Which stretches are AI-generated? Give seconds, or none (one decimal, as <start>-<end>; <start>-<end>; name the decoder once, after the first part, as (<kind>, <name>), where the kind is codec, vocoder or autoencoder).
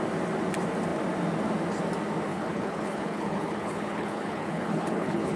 2.3-5.4 (codec, HILCodec)